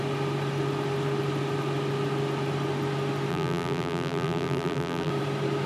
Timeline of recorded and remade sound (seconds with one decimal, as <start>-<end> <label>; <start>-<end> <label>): 0.0-3.3 recorded; 3.3-5.1 remade; 5.1-5.7 recorded